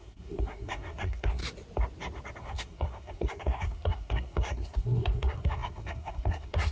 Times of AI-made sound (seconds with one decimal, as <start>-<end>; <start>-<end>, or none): 0.0-1.4; 2.4-6.7